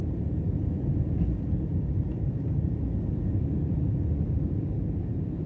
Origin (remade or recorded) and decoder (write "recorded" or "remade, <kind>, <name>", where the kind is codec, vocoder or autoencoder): recorded